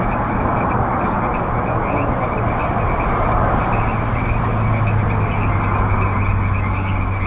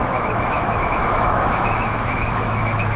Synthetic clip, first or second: second